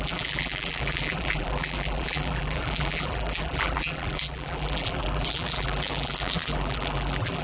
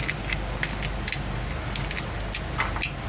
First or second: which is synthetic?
first